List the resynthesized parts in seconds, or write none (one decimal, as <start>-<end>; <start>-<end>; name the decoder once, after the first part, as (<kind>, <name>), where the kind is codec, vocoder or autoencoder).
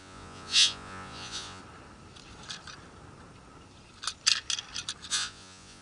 0.0-1.6 (vocoder, Vocos); 5.1-5.8